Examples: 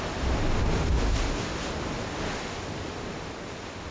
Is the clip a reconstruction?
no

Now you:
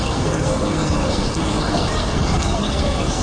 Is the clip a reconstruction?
yes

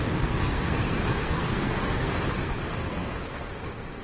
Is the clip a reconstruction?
yes